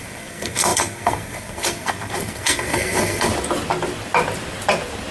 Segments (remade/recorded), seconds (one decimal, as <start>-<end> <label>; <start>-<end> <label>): 0.0-3.3 remade; 3.3-5.1 recorded